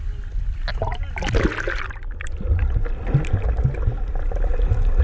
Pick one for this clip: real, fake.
real